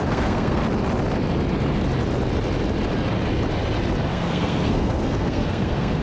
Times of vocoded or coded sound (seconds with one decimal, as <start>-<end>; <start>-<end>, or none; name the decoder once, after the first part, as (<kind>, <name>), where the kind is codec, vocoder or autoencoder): 0.0-0.6 (codec, SNAC); 4.1-6.0